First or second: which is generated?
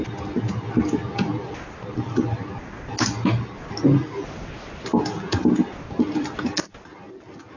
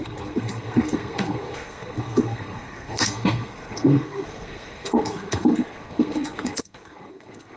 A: second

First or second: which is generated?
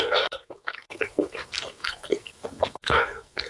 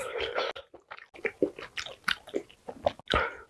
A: first